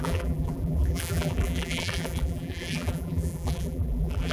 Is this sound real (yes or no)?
no